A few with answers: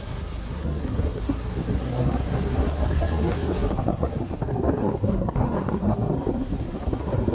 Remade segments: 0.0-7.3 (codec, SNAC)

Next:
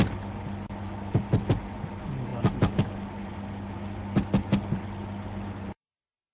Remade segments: none

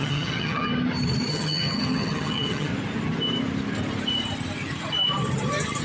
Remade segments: 0.0-0.7 (vocoder, HiFi-GAN); 1.3-2.7

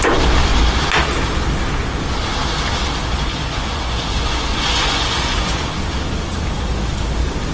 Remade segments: 3.3-5.6 (vocoder, Vocos)

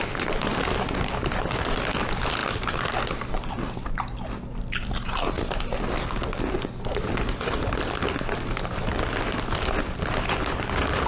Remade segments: none

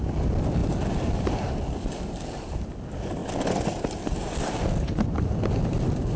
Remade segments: none